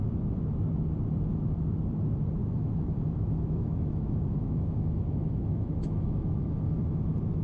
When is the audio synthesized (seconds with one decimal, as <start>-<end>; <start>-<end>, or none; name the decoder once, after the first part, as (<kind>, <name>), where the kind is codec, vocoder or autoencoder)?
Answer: 2.4-6.8 (autoencoder, DAC-VAE)